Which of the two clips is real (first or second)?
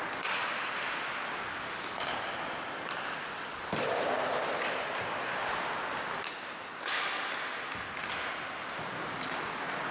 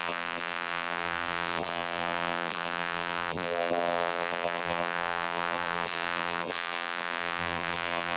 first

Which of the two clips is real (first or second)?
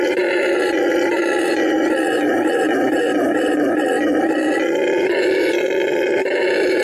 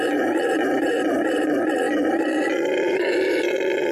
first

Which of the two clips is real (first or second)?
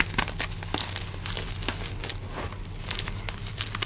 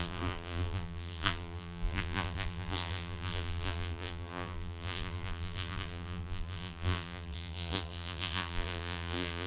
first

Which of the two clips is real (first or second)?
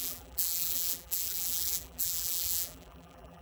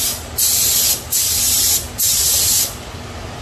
second